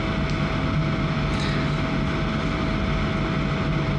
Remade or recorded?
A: recorded